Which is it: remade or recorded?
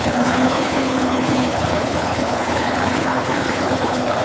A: remade